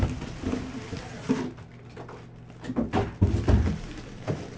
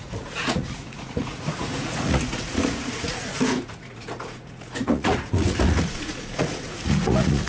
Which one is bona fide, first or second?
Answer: first